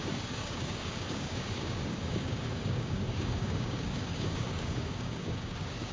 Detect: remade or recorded remade